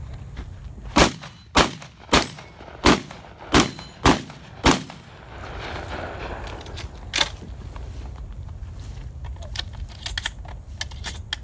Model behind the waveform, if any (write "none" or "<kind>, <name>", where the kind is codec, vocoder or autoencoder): none